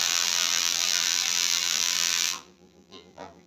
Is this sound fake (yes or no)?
yes